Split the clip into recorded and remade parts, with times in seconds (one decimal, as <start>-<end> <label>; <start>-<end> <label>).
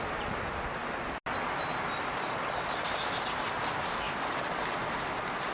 0.0-5.5 recorded